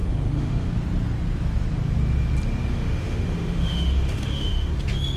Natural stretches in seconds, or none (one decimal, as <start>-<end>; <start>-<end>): 0.7-2.7; 4.7-5.2

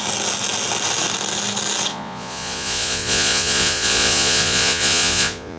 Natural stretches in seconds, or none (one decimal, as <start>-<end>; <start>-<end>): 0.0-1.9

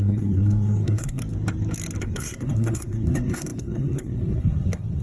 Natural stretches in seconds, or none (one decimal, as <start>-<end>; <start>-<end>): 1.2-2.0

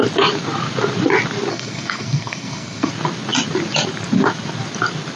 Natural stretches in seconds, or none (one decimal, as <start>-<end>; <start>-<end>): 0.0-1.5; 2.9-5.2

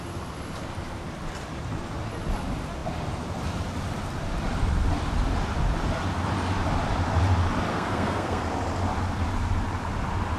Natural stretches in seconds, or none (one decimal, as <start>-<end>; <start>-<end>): 0.0-7.7; 8.4-10.4